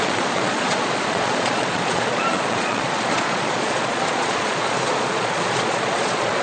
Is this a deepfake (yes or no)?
yes